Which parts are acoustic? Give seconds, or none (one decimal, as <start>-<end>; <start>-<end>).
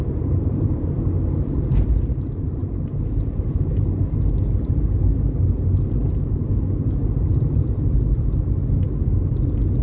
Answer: 1.0-9.8